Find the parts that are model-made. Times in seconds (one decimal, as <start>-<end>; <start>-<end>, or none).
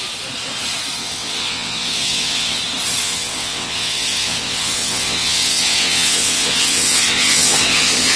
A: 1.0-2.6; 3.0-8.2